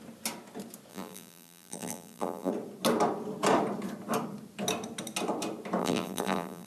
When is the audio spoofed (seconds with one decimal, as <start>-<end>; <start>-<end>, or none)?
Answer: 0.9-2.5; 5.8-6.7

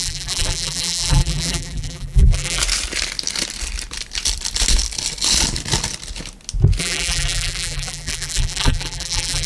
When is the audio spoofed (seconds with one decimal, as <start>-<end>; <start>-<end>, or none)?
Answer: 0.0-2.6; 6.8-9.5

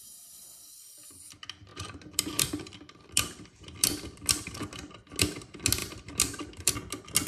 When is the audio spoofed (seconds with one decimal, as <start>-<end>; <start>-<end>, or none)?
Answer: 1.7-5.2; 5.8-6.7